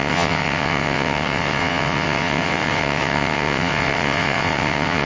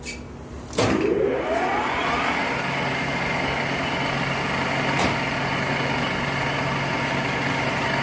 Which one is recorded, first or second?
second